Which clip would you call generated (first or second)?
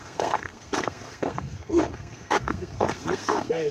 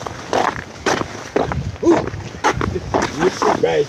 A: first